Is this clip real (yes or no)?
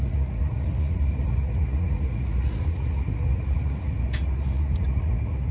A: no